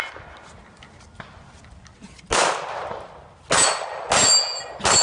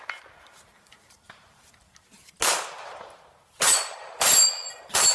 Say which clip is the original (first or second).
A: first